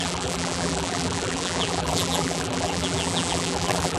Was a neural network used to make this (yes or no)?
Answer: yes